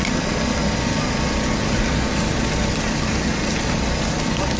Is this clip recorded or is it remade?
recorded